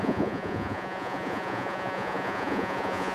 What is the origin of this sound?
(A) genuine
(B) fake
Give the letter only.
B